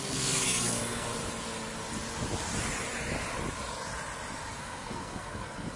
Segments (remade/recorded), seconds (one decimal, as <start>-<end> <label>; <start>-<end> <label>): 0.0-1.1 remade; 1.1-4.6 recorded; 4.6-5.8 remade